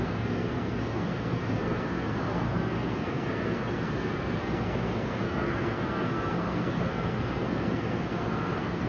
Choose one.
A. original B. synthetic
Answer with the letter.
B